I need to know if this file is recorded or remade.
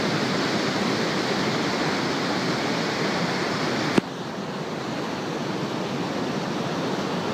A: recorded